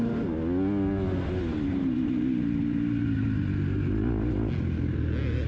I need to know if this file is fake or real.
real